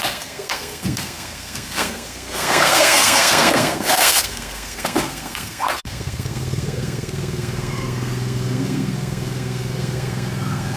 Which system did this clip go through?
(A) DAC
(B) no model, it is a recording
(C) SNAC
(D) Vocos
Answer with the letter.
C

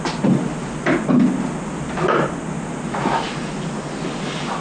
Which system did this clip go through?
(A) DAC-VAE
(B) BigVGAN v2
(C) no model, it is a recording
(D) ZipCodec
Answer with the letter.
C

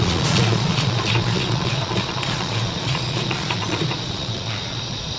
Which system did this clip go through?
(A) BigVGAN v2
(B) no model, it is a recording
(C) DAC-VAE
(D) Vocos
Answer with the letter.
D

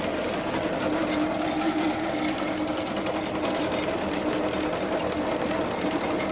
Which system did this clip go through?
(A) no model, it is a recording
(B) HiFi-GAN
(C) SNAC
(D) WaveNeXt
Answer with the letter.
A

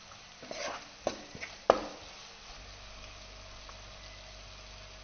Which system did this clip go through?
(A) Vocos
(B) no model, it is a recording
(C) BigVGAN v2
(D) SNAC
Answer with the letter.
B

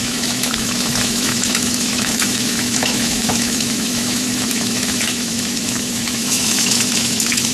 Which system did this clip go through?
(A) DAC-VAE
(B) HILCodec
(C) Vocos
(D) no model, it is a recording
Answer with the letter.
A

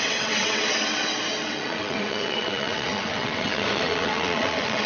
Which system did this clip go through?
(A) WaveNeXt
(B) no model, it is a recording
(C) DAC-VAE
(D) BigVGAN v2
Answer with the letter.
A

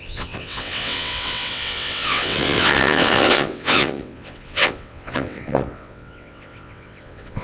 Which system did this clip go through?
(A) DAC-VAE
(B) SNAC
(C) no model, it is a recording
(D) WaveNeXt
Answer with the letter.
D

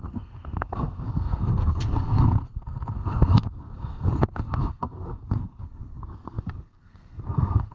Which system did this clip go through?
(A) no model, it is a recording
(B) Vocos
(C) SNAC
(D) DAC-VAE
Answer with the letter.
C